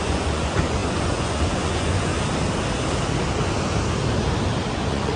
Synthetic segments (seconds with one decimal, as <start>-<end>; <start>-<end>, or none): 0.0-2.1; 4.7-5.2